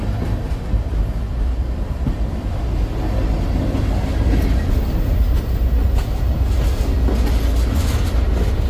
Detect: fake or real real